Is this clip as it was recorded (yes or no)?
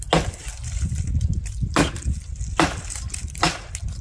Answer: yes